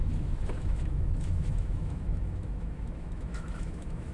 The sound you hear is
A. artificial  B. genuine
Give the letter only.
A